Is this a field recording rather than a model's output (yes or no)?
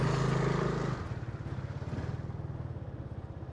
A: yes